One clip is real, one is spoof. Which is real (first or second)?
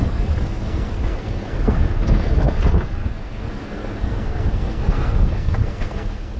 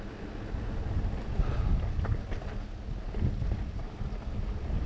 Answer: second